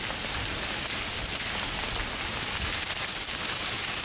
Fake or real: real